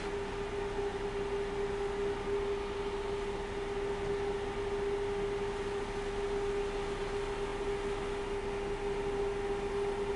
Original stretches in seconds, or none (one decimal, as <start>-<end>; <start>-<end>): 0.0-10.2